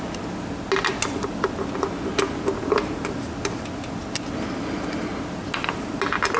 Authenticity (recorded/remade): recorded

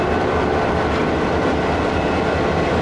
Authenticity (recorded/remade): recorded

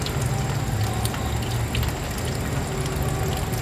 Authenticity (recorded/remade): recorded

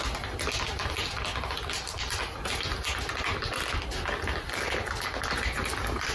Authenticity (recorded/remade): recorded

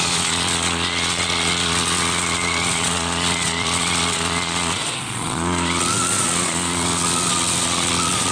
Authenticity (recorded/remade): remade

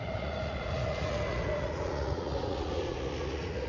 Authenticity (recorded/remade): remade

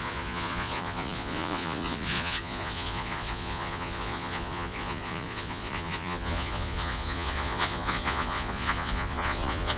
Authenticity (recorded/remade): remade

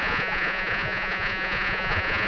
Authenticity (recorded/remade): remade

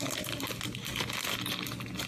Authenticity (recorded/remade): recorded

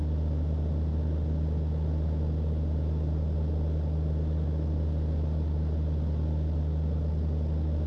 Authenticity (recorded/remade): recorded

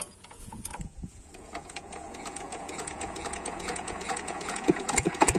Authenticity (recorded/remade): remade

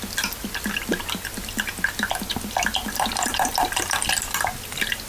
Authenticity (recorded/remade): recorded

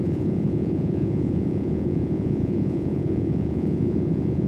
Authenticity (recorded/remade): remade